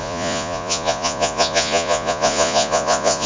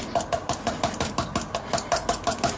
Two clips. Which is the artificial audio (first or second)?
first